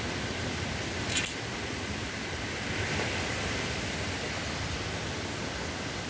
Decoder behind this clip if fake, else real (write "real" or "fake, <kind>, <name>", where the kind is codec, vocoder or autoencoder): real